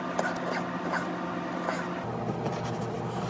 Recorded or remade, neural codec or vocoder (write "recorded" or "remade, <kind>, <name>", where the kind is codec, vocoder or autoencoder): recorded